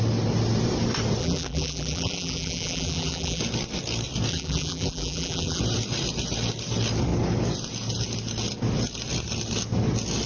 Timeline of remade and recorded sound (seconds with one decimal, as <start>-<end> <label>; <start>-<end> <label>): 0.0-1.2 recorded; 1.2-3.4 remade; 3.4-4.3 recorded; 4.3-5.6 remade; 5.6-10.3 recorded